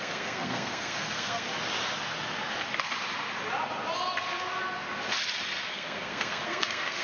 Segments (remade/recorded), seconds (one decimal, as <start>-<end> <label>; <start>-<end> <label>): 0.0-1.5 remade; 1.5-5.7 recorded; 5.7-7.0 remade